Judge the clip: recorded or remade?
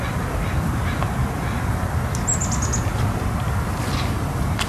recorded